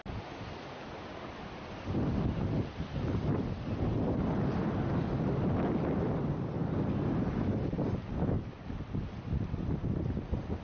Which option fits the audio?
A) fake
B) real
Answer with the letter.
B